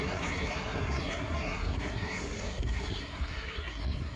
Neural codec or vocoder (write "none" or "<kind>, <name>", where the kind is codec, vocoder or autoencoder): codec, SNAC